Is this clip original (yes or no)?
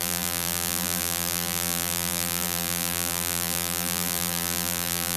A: no